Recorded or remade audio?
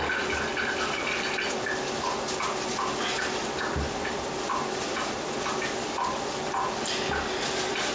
recorded